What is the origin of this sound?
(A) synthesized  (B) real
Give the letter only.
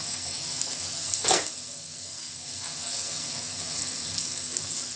A